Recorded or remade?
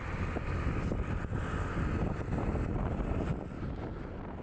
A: recorded